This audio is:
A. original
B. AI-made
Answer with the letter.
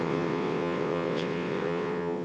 B